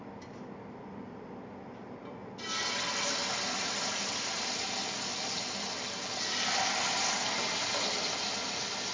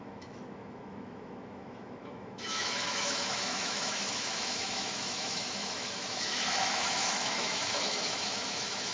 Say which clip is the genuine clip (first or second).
first